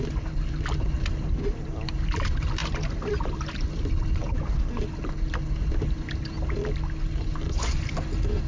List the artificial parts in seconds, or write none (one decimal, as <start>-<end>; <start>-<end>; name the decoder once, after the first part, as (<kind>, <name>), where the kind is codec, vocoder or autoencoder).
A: none